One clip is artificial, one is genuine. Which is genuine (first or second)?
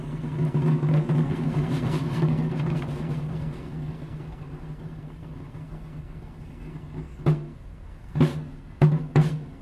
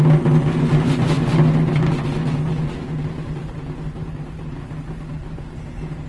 second